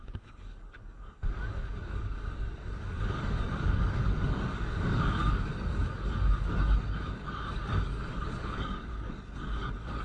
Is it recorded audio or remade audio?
remade